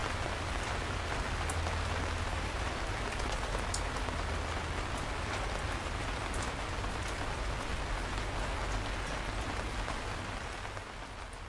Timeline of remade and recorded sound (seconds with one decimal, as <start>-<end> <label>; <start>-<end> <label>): 0.0-11.5 recorded